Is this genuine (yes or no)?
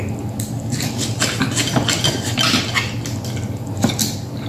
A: yes